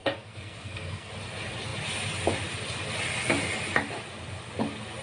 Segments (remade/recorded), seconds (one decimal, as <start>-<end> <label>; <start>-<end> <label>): 0.0-1.1 remade; 1.1-5.0 recorded